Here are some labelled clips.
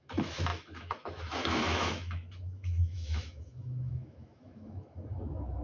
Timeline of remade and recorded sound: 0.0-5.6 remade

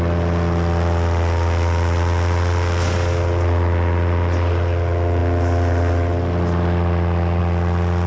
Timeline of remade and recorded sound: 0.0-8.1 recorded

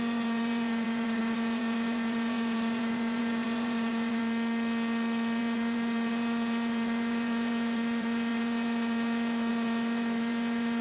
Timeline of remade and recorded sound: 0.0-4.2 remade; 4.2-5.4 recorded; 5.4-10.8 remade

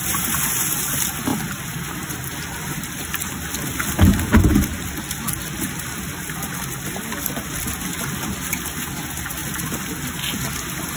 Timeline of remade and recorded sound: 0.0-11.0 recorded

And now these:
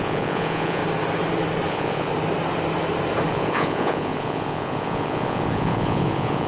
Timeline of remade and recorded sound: 0.0-0.8 remade; 0.8-1.7 recorded; 1.7-2.1 remade; 2.1-3.3 recorded; 3.3-6.5 remade